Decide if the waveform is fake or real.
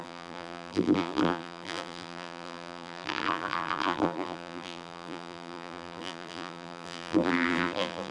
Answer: fake